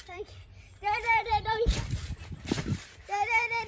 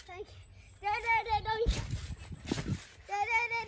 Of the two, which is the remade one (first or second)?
first